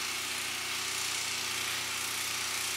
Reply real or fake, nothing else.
real